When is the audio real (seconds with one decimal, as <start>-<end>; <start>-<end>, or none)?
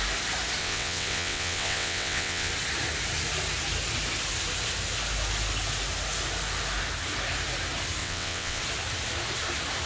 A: 0.0-0.6; 2.5-8.0; 8.6-9.9